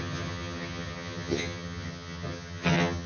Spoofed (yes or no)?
yes